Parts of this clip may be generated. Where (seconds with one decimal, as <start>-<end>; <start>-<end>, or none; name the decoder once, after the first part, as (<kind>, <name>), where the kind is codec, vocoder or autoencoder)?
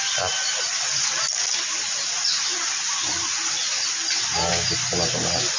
none